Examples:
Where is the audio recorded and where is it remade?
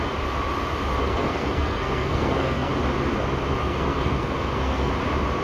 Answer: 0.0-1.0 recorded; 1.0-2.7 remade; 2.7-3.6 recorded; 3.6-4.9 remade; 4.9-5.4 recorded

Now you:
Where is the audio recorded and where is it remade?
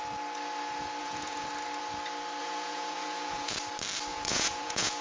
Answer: 0.0-1.0 recorded; 1.0-1.5 remade; 1.5-2.4 recorded; 2.4-3.5 remade; 3.5-4.1 recorded; 4.1-5.0 remade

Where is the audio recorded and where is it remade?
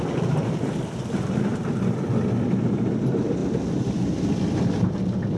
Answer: 0.0-3.4 remade; 3.4-4.2 recorded; 4.2-5.4 remade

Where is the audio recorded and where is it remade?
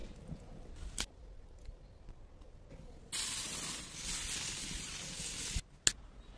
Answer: 0.0-0.8 remade; 0.8-6.4 recorded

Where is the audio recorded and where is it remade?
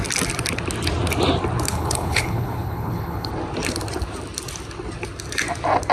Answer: 0.0-1.7 recorded; 1.7-3.3 remade; 3.3-5.9 recorded